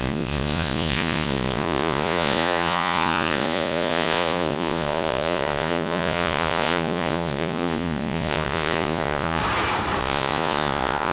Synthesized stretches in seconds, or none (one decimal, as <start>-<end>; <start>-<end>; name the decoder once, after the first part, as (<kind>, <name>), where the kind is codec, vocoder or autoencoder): 0.0-9.4 (vocoder, Vocos); 10.0-11.1